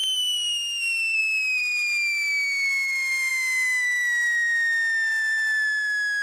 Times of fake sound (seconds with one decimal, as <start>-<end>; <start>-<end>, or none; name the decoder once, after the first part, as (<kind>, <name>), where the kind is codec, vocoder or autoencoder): none